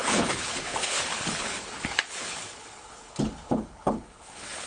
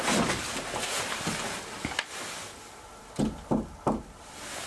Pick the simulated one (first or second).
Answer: first